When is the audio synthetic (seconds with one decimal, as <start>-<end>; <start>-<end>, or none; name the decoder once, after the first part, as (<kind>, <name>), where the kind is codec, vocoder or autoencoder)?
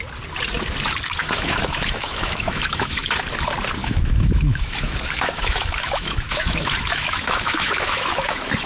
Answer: 1.2-3.1 (autoencoder, DAC-VAE); 3.8-8.7